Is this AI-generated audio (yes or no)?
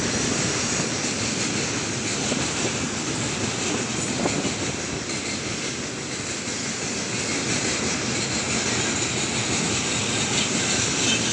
no